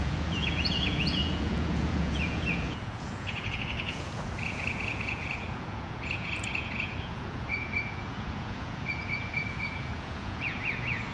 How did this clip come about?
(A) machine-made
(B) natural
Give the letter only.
A